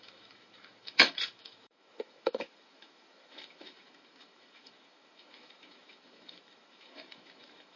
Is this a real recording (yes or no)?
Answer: no